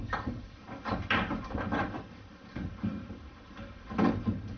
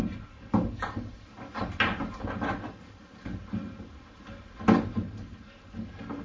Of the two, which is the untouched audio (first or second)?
second